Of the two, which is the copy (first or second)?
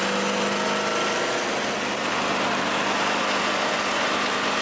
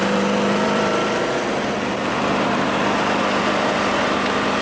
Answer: second